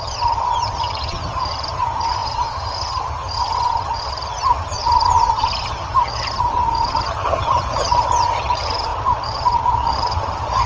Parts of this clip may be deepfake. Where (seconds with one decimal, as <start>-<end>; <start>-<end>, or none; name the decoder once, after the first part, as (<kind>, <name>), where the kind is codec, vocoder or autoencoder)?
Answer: 0.0-10.7 (vocoder, HiFi-GAN)